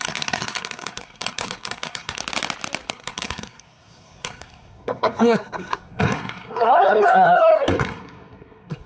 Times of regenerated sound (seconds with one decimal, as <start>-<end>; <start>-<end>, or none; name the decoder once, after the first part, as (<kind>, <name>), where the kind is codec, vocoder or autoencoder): 0.0-2.2 (codec, SNAC); 2.9-8.9